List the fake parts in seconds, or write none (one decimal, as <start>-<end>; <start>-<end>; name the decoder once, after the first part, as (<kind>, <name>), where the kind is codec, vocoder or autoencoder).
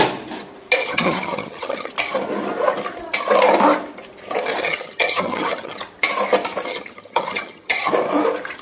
0.8-1.9 (vocoder, HiFi-GAN); 4.6-5.8; 6.7-7.9